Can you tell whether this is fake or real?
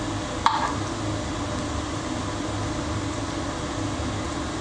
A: real